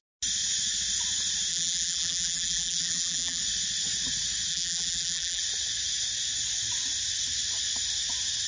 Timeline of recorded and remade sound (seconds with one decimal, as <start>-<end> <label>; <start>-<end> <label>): 0.0-1.5 recorded; 1.5-3.4 remade; 3.4-4.5 recorded; 4.5-5.4 remade; 5.4-8.5 recorded